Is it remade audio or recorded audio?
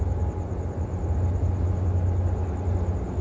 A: recorded